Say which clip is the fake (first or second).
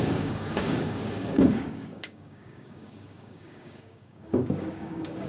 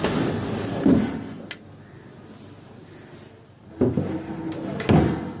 first